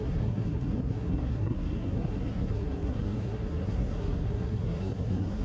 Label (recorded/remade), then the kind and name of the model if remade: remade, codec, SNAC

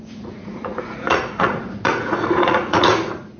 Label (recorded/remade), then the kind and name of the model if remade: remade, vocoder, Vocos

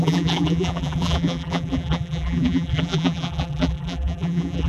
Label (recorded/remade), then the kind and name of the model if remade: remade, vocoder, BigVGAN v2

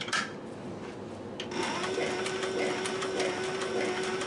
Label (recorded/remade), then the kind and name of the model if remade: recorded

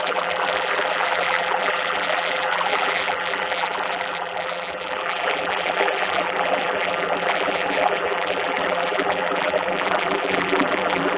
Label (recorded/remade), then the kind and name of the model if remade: remade, vocoder, BigVGAN v2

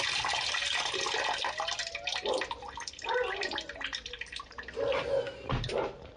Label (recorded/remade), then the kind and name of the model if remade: recorded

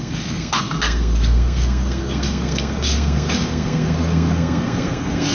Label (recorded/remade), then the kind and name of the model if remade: remade, codec, SNAC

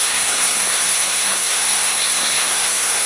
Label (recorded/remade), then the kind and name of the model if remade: remade, codec, SNAC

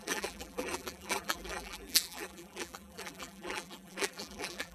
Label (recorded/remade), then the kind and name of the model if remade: remade, vocoder, BigVGAN v2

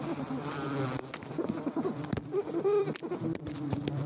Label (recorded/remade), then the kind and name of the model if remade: remade, vocoder, BigVGAN v2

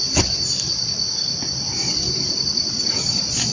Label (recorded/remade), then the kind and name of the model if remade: recorded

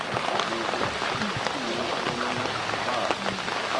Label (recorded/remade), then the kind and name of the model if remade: recorded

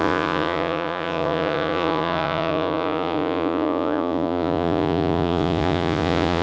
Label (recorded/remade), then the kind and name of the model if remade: remade, vocoder, Vocos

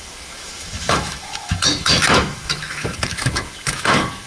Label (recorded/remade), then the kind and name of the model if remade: remade, autoencoder, DAC-VAE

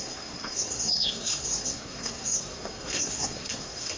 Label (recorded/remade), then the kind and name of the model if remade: remade, codec, SNAC